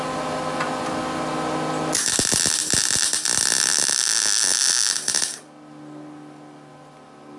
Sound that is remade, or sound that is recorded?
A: recorded